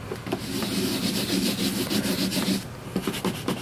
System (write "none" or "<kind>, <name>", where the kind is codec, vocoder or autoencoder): none